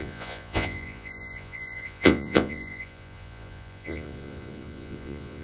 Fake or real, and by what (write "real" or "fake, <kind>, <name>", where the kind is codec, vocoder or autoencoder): fake, vocoder, Vocos